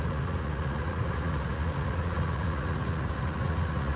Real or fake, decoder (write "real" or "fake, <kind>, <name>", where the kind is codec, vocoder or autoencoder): fake, vocoder, Vocos